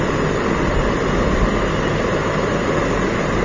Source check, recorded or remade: recorded